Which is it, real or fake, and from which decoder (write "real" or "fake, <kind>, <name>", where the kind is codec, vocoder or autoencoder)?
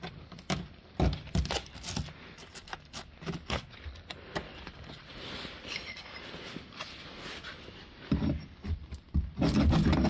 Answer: real